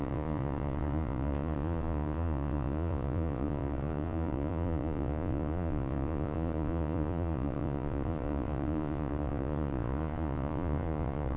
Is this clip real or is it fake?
fake